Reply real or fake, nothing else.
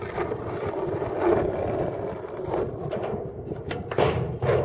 real